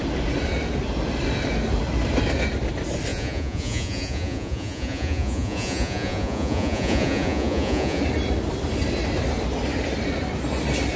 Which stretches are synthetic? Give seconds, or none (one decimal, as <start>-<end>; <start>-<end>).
3.1-8.0